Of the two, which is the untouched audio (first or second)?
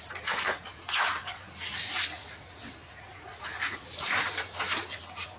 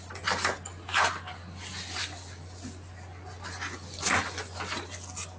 second